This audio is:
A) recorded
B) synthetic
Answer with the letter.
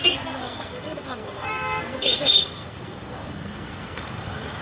B